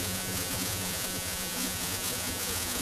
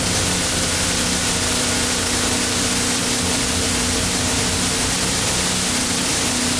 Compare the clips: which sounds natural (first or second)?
second